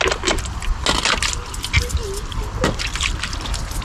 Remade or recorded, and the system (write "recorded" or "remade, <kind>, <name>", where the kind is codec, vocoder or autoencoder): recorded